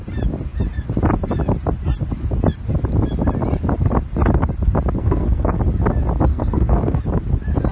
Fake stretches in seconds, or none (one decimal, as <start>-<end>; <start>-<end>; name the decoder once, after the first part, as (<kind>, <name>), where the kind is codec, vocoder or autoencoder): 5.0-5.6 (codec, SNAC); 6.3-7.0